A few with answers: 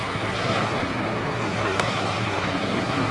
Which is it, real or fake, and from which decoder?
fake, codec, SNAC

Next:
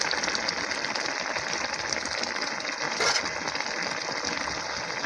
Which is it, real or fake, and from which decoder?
real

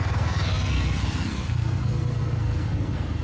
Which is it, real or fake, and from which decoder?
fake, codec, SNAC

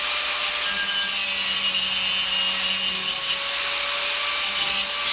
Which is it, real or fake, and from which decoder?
real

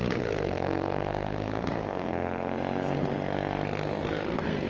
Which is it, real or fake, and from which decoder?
fake, codec, SNAC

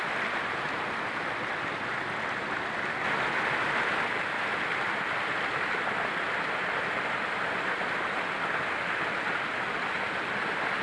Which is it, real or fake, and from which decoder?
real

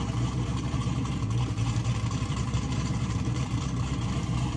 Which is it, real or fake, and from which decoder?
fake, vocoder, BigVGAN v2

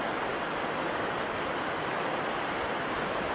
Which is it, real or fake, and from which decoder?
real